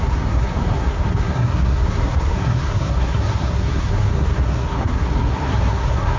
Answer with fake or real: fake